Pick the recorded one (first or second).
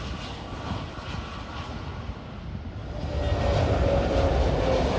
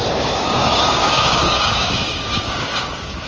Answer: first